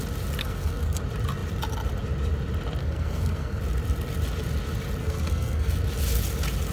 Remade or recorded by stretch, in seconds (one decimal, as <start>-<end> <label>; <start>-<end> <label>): 0.0-0.4 recorded; 0.4-1.0 remade; 1.0-2.8 recorded; 2.8-3.6 remade; 3.6-5.0 recorded; 5.0-5.7 remade; 5.7-6.7 recorded

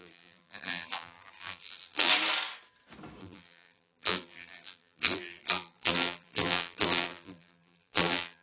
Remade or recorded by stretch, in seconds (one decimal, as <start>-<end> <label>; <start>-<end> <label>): 0.0-2.1 remade; 2.1-3.2 recorded; 3.2-8.4 remade